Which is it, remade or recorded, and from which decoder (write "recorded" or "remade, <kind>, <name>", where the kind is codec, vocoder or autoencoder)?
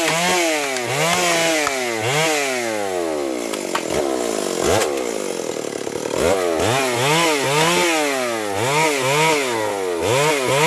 recorded